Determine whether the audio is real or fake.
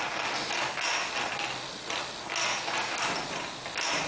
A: real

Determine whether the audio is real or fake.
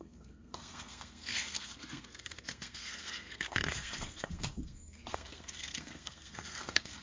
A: fake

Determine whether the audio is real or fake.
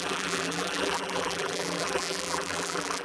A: fake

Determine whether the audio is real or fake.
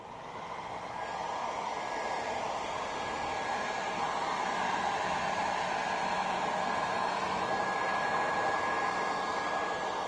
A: real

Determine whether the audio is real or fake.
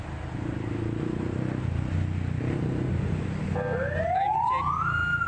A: real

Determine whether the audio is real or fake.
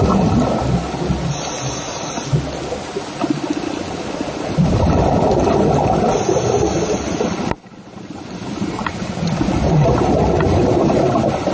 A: real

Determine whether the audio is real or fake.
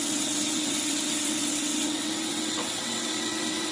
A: fake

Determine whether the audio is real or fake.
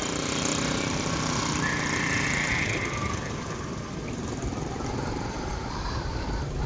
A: fake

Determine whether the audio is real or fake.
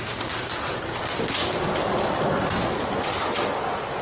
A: real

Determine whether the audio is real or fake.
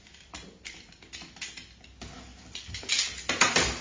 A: real